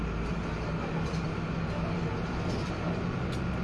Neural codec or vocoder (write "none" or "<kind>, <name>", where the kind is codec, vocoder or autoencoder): none